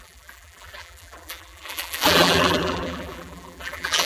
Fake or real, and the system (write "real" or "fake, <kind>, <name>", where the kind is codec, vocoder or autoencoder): fake, vocoder, BigVGAN v2